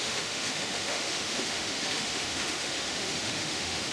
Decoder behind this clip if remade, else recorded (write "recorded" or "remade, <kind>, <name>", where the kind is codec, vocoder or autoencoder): remade, autoencoder, DAC-VAE